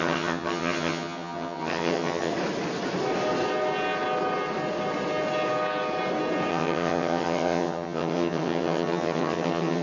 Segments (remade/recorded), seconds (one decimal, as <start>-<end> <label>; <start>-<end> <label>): 0.0-2.3 remade; 2.3-6.5 recorded; 6.5-9.8 remade